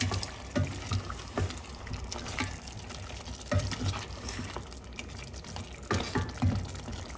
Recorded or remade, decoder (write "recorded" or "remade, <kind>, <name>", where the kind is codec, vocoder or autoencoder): recorded